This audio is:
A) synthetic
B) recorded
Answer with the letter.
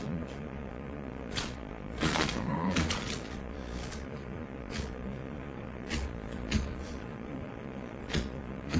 A